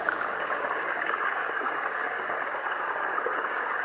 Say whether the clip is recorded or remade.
remade